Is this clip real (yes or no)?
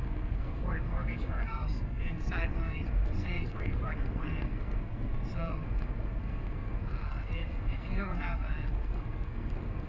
no